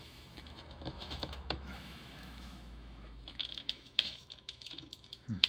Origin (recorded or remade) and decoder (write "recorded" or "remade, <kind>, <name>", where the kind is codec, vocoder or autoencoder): remade, autoencoder, DAC-VAE